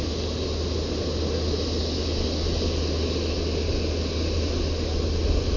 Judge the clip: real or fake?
real